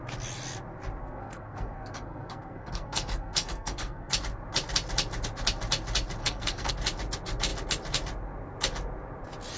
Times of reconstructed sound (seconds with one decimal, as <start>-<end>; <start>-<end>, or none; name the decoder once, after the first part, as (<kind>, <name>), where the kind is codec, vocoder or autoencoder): 1.0-4.1 (codec, SNAC); 6.2-6.7